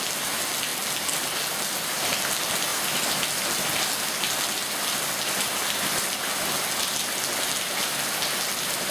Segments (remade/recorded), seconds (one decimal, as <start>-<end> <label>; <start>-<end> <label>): 0.0-8.9 recorded